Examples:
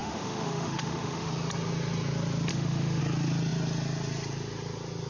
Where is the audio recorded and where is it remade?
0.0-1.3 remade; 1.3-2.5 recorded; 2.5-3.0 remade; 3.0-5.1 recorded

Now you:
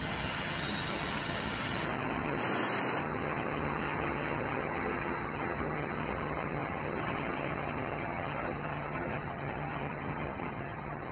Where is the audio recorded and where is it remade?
0.0-2.4 remade; 2.4-3.0 recorded; 3.0-11.1 remade

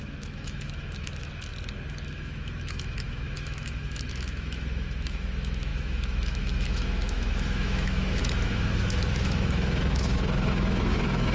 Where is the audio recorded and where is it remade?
0.0-1.5 remade; 1.5-2.0 recorded; 2.0-11.3 remade